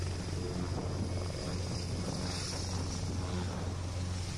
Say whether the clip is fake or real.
real